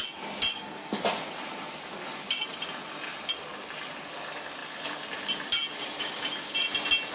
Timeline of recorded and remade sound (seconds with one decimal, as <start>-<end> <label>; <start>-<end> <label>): 0.0-0.5 recorded; 0.5-1.0 remade; 1.0-7.1 recorded